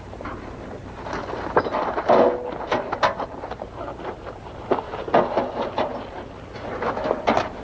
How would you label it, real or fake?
real